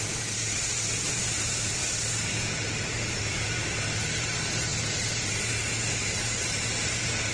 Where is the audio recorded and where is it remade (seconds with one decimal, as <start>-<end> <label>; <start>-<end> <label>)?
0.0-7.3 remade